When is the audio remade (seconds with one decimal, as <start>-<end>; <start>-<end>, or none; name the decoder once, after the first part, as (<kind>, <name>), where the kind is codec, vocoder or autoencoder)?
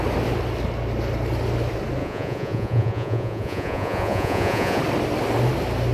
2.0-4.8 (vocoder, Vocos)